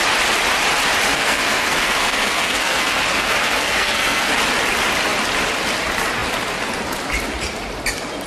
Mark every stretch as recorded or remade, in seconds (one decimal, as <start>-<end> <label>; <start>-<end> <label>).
0.0-1.1 recorded; 1.1-4.3 remade; 4.3-8.3 recorded